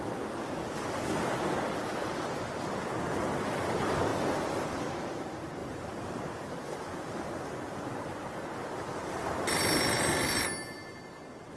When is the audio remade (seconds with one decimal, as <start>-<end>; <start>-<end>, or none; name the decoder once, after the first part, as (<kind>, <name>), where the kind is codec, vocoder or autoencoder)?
none

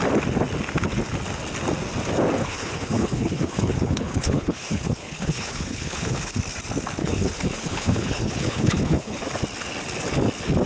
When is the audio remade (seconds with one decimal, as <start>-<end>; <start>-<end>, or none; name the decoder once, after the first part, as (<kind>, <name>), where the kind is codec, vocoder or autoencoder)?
2.4-6.4 (codec, HILCodec); 7.0-9.2

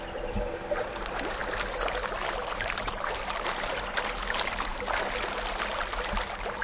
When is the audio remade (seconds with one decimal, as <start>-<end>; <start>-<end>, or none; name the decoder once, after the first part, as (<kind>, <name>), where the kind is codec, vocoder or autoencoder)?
none

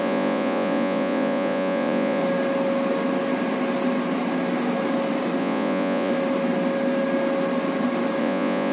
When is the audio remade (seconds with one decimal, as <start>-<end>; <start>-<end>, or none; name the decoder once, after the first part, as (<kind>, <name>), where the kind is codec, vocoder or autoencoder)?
0.0-2.2 (vocoder, Vocos); 5.4-6.1; 8.2-8.7

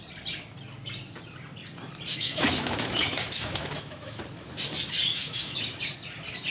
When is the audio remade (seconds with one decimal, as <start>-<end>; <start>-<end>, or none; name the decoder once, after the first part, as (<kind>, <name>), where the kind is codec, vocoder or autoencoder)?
2.1-4.2 (autoencoder, DAC-VAE); 5.1-5.8

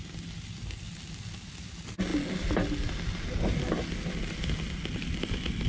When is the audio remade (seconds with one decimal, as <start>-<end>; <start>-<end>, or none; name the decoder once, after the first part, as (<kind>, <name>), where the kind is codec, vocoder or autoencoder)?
none